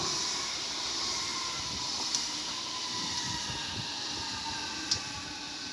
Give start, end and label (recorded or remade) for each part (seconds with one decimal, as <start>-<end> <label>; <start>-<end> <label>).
0.0-5.7 recorded